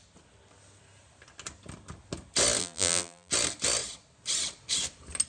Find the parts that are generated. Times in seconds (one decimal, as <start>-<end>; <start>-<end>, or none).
2.6-3.3